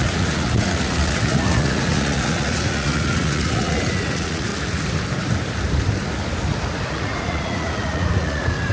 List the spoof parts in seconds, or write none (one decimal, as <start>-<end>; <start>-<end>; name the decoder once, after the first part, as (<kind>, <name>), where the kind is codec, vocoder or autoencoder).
0.0-4.5 (vocoder, Vocos); 6.8-8.7